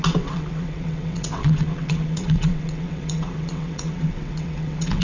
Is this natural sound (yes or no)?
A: no